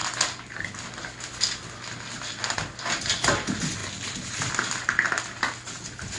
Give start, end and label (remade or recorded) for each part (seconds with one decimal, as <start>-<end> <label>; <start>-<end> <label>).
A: 0.0-6.2 recorded